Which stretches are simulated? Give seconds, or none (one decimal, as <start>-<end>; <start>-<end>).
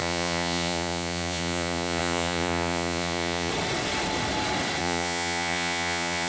0.0-3.5; 4.8-6.3